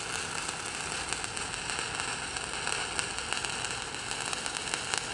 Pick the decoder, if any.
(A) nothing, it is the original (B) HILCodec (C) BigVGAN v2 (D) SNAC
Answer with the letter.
A